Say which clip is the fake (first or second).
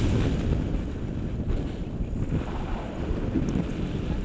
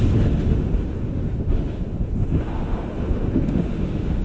second